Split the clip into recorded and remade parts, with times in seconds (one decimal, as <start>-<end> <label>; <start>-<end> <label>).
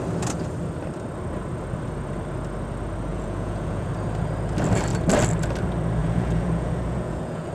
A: 0.0-3.1 recorded; 3.1-3.9 remade; 3.9-6.0 recorded; 6.0-7.5 remade